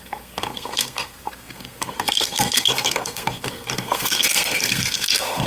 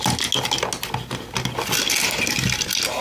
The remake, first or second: first